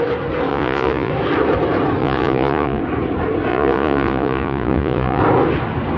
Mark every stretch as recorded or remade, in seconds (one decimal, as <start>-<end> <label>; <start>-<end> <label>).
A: 0.0-0.5 recorded; 0.5-1.1 remade; 1.1-2.0 recorded; 2.0-2.8 remade; 2.8-3.5 recorded; 3.5-5.2 remade; 5.2-6.0 recorded